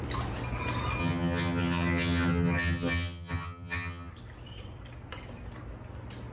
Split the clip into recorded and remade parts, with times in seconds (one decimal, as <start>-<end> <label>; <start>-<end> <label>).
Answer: 0.0-1.0 recorded; 1.0-4.1 remade; 4.1-6.3 recorded